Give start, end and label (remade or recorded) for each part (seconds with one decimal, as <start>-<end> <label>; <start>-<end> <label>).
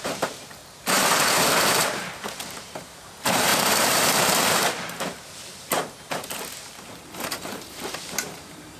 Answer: 0.0-0.6 remade; 0.6-1.6 recorded; 1.6-8.8 remade